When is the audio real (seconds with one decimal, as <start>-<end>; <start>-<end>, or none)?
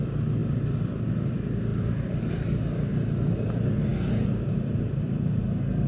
0.0-1.7; 2.3-5.9